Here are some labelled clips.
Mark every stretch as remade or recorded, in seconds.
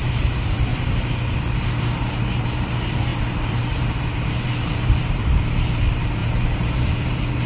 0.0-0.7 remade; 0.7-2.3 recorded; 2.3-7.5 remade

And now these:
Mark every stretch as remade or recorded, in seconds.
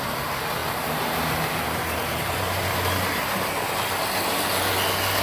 0.0-0.6 recorded; 0.6-3.7 remade; 3.7-5.2 recorded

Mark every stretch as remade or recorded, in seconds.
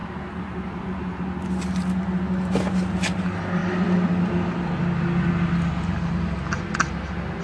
0.0-1.2 remade; 1.2-7.4 recorded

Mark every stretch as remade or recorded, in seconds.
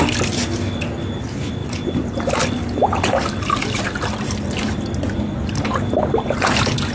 0.0-1.6 recorded; 1.6-3.8 remade; 3.8-6.9 recorded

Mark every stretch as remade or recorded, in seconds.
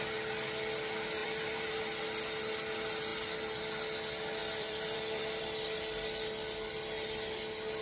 0.0-1.2 recorded; 1.2-1.8 remade; 1.8-4.4 recorded; 4.4-5.4 remade; 5.4-7.8 recorded